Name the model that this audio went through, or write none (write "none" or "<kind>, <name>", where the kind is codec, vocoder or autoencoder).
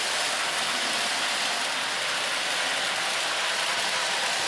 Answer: none